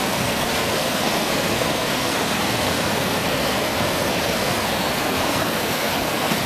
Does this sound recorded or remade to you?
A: remade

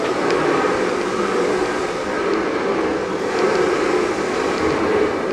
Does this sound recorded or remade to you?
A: recorded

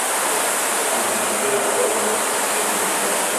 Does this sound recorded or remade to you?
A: recorded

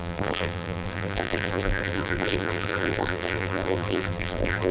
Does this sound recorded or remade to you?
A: remade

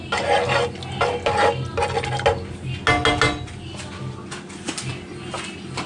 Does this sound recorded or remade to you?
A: recorded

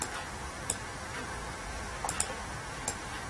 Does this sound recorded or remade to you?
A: recorded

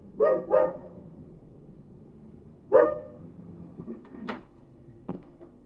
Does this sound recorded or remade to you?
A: remade